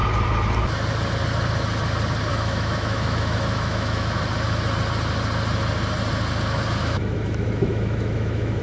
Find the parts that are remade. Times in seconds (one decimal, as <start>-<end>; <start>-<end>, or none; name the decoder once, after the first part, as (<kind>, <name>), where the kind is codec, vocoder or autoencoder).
2.3-4.2 (autoencoder, DAC-VAE); 6.8-8.6